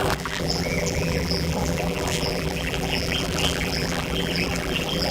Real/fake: fake